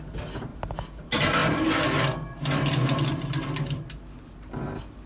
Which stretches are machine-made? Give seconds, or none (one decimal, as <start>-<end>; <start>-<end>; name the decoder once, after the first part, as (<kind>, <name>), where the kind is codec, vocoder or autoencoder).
none